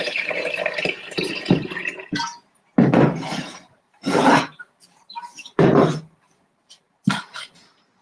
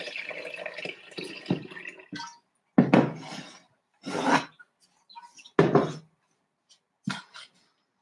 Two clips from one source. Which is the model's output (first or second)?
first